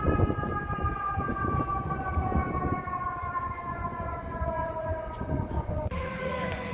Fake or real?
fake